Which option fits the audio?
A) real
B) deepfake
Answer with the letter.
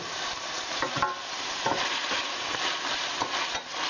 A